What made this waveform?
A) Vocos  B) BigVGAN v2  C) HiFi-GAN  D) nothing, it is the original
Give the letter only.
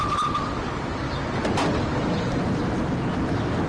D